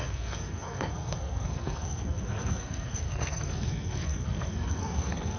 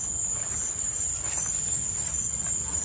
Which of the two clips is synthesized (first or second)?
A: first